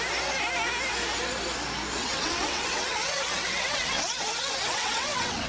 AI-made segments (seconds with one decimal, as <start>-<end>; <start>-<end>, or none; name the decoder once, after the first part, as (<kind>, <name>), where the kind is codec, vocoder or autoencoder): 2.0-5.5 (vocoder, WaveNeXt)